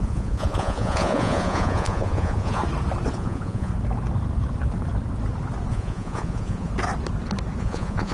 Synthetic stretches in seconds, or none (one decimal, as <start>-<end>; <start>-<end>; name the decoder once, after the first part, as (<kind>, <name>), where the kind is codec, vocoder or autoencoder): 0.0-2.6 (vocoder, Vocos); 3.1-3.7; 5.7-6.7; 7.6-8.1